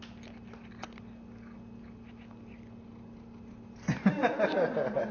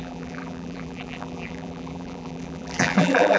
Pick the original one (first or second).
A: first